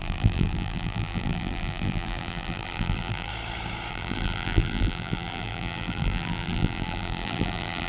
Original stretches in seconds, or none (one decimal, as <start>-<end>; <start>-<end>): 3.3-3.9

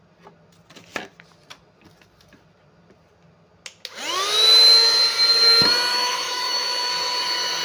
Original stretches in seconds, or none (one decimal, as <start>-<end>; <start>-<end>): 0.0-5.9; 6.9-7.6

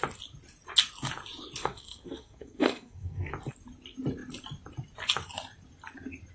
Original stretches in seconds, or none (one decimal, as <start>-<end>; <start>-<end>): 0.0-1.6; 3.3-6.3

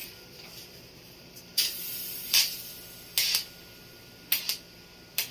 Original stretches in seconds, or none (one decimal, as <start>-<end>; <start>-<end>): 2.4-5.3

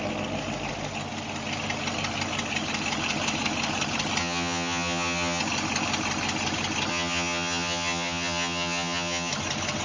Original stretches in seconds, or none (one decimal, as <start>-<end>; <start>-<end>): 0.0-4.2; 5.4-6.9; 9.3-9.8

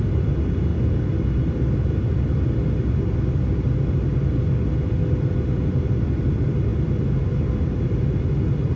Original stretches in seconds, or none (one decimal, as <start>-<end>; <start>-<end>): 0.0-8.8

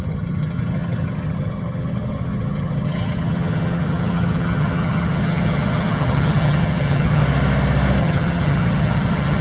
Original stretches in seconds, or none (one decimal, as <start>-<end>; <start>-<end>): 7.2-8.0

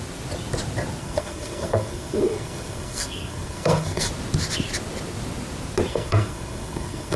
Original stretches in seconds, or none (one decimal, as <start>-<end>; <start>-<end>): 0.0-1.0; 4.1-5.9